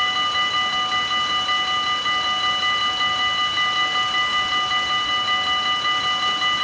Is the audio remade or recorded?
recorded